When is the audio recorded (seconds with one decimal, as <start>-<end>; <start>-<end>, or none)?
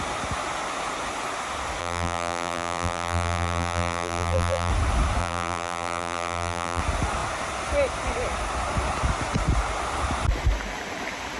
0.0-1.8; 4.7-5.2; 6.8-11.4